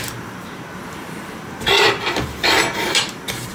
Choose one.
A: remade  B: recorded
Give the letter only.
A